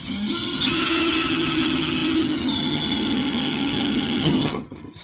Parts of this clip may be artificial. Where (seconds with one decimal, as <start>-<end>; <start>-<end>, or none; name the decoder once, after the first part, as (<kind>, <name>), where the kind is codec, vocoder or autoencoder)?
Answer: 0.0-5.0 (vocoder, HiFi-GAN)

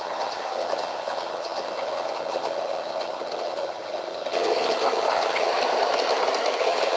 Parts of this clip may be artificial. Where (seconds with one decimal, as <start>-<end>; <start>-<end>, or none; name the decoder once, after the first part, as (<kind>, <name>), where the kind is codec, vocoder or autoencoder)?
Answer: 0.0-5.5 (vocoder, HiFi-GAN); 6.6-7.0